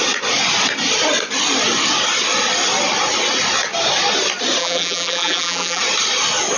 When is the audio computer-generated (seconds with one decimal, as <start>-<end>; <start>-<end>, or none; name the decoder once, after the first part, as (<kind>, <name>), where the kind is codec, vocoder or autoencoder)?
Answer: 4.6-5.8 (vocoder, BigVGAN v2)